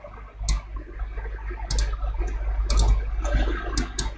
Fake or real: real